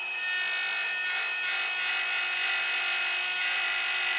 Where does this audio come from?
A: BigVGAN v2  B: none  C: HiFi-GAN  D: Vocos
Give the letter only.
B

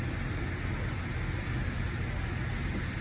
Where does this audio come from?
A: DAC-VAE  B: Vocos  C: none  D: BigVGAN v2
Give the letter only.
C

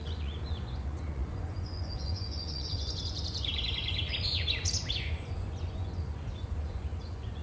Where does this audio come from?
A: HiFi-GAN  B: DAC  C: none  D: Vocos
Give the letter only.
D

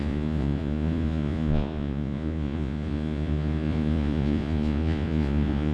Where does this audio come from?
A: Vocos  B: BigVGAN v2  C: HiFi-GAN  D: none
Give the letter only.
A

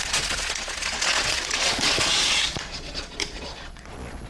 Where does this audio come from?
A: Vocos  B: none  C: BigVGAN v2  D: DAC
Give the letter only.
A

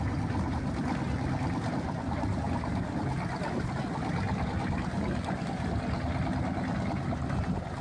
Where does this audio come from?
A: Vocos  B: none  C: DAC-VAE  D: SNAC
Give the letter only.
B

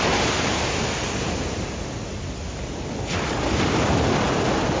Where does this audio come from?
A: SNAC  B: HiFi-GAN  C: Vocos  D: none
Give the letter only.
D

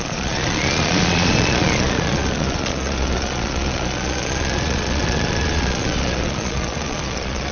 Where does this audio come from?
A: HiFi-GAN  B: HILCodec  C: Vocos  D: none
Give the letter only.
C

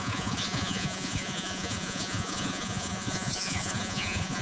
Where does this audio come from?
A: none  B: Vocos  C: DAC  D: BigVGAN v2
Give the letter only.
B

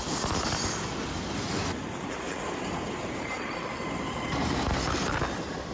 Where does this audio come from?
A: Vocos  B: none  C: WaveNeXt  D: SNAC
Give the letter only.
B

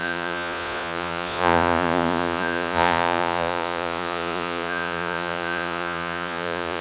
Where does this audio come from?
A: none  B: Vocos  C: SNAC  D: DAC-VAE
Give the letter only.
B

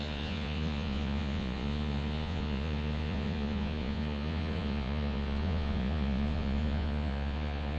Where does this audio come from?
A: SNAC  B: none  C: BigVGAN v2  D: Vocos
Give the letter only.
D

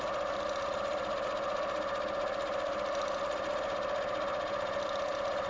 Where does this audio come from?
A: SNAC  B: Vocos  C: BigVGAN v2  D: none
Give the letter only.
D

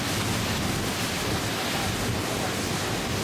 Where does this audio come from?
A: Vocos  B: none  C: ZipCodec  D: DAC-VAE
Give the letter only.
B